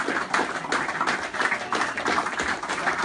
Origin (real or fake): real